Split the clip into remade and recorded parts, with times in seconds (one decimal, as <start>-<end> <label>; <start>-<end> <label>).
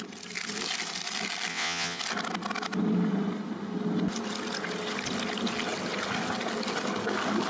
0.0-1.5 recorded; 1.5-2.0 remade; 2.0-7.5 recorded